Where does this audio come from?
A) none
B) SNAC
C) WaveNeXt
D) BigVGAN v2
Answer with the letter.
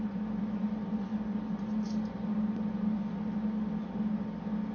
A